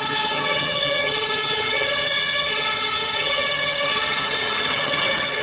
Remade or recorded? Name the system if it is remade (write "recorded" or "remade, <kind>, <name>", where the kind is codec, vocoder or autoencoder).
remade, vocoder, HiFi-GAN